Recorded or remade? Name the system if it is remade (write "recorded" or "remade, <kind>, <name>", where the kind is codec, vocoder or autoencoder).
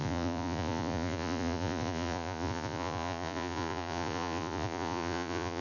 remade, vocoder, Vocos